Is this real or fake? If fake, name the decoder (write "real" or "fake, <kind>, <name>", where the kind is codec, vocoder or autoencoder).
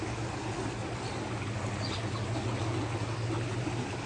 real